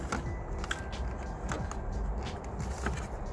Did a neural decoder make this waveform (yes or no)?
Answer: no